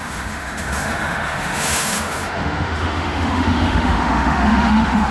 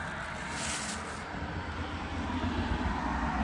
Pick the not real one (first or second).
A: first